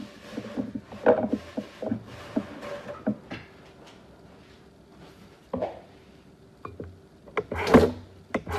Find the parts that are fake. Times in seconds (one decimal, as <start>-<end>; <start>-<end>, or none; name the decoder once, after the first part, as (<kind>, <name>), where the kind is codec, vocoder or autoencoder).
none